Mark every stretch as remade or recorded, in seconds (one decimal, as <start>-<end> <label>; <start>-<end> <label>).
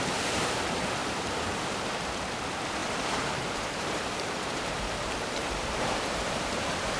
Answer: 0.0-1.0 recorded; 1.0-1.6 remade; 1.6-2.8 recorded; 2.8-7.0 remade